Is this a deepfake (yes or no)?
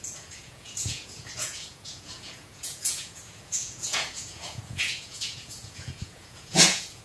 yes